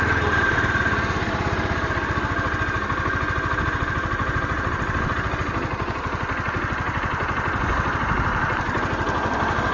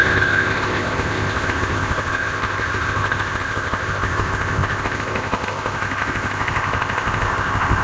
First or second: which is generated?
second